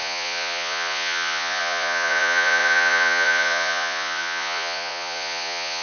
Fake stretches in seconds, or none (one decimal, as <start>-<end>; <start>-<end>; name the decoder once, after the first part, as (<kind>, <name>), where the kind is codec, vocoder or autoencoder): 0.0-5.8 (vocoder, Vocos)